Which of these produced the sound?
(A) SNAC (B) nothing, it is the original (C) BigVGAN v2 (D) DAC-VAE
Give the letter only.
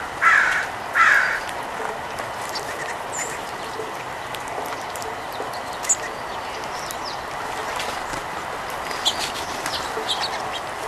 B